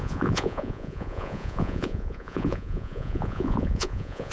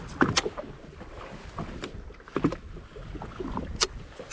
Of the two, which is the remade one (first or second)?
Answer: first